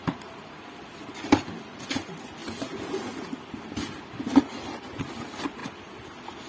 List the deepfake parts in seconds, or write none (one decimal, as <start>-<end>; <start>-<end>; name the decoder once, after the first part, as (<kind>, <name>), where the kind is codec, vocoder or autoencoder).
0.0-2.4 (vocoder, BigVGAN v2); 5.1-5.6